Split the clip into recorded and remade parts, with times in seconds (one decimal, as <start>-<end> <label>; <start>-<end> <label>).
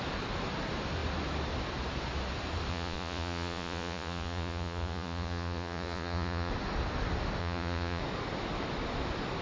0.0-2.7 recorded; 2.7-6.5 remade; 6.5-7.4 recorded; 7.4-8.0 remade; 8.0-9.4 recorded